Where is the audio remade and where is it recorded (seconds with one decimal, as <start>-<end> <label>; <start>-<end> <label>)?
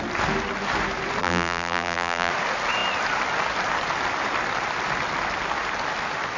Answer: 0.0-1.2 recorded; 1.2-2.3 remade; 2.3-6.4 recorded